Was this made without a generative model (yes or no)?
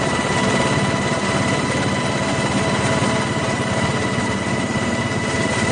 yes